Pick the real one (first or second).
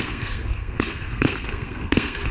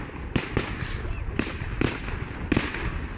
second